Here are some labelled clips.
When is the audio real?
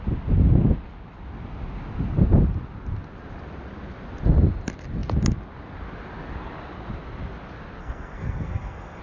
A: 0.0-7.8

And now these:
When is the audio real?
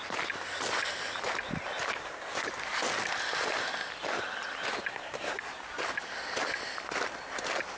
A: 0.0-1.9; 2.4-4.9; 5.5-7.8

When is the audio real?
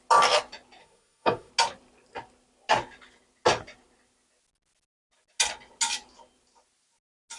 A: 0.0-0.8; 1.5-7.4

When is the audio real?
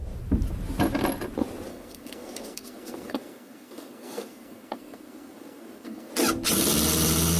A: 0.0-1.7; 6.1-7.4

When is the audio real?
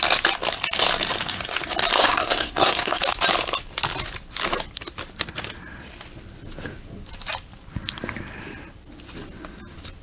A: 0.0-2.0; 3.0-10.0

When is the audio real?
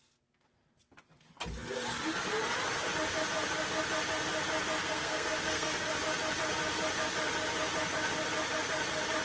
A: 0.0-4.8; 5.9-9.2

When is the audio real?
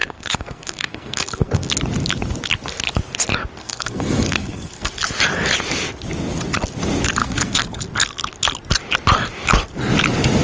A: 1.7-3.6; 4.9-7.2; 7.8-10.4